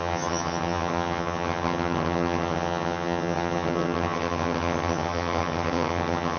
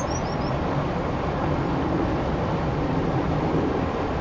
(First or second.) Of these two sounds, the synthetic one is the first